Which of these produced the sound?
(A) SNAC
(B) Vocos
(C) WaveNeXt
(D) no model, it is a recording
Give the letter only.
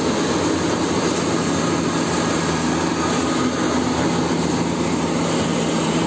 D